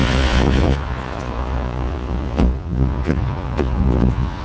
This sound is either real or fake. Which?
fake